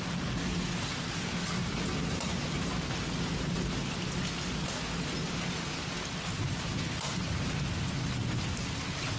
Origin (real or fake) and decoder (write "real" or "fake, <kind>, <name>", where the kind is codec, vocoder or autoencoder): real